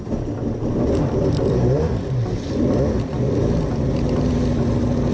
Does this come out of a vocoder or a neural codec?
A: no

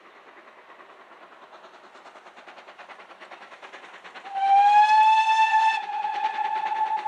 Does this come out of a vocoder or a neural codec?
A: no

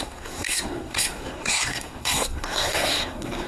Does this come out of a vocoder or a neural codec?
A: yes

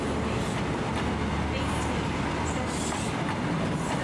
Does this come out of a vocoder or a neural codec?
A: no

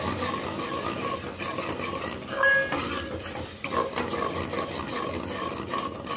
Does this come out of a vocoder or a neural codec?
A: no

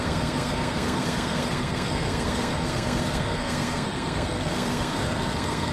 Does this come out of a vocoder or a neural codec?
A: yes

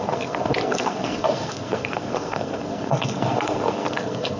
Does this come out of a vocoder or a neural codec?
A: yes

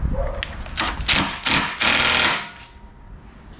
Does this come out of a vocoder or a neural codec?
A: no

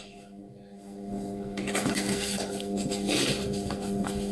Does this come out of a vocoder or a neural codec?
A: yes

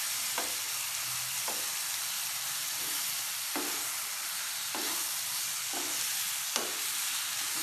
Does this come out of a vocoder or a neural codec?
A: no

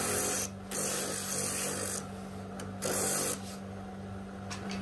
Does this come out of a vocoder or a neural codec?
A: no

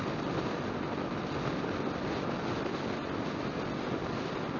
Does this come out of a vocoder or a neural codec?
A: no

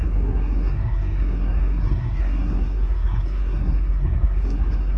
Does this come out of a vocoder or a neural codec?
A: yes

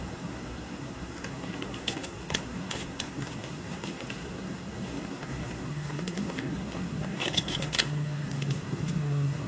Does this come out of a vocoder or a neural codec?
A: yes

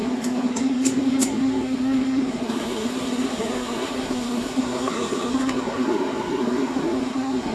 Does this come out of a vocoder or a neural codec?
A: yes